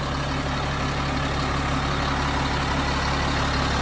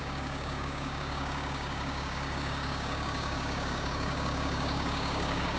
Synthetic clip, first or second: second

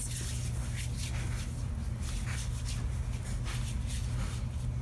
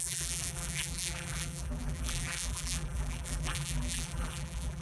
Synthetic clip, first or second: second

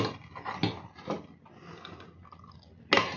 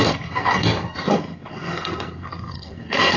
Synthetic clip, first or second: second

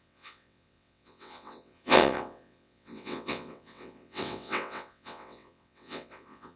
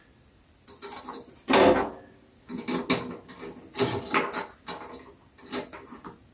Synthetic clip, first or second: first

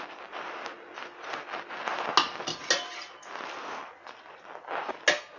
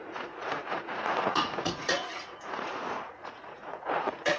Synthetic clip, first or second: second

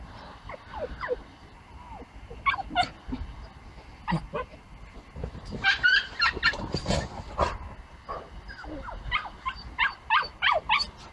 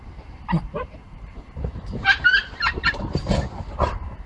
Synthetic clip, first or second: second